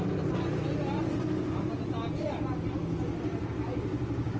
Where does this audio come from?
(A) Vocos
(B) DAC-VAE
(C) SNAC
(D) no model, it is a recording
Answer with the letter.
D